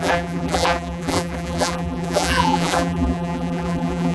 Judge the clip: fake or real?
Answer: fake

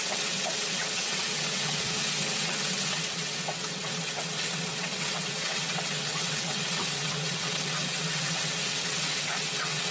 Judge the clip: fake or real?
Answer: fake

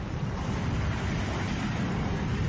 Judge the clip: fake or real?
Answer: fake